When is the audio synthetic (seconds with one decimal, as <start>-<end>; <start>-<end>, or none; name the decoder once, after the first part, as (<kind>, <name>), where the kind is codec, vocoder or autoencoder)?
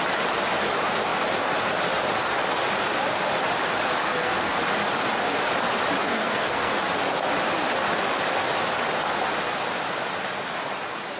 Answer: 4.0-4.6 (codec, SNAC); 6.0-6.7